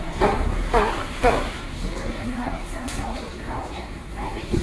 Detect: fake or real fake